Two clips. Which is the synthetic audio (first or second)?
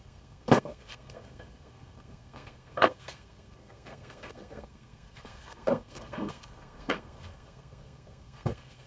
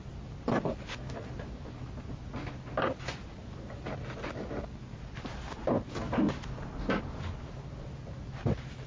first